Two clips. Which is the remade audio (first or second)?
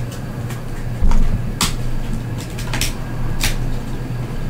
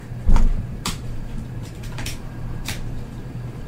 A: second